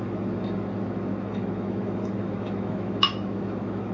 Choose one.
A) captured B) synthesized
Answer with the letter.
B